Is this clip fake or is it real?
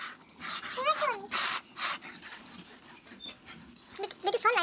real